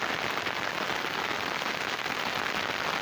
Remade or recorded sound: recorded